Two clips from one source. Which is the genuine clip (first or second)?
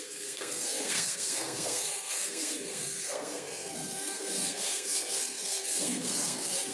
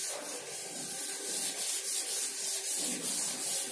second